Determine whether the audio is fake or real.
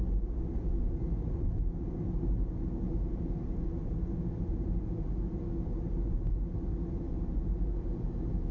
real